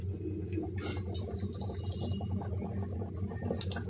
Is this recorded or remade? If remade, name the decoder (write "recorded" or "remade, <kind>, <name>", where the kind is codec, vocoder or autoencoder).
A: recorded